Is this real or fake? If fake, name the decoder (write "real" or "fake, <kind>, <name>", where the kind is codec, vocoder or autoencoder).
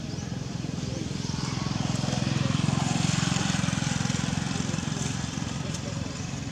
real